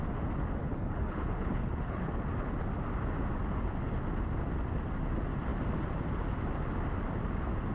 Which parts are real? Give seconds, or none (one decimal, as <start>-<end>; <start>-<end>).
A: 0.0-0.6; 2.1-7.7